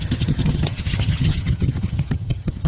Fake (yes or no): yes